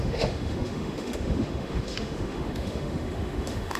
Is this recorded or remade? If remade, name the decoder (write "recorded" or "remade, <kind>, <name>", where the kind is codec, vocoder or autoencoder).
remade, autoencoder, DAC-VAE